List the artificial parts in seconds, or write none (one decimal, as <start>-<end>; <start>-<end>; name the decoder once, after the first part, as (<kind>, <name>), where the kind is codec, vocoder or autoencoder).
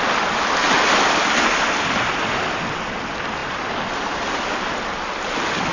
none